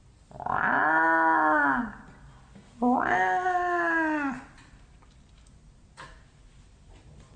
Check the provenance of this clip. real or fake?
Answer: real